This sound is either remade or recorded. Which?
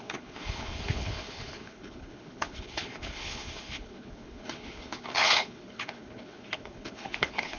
remade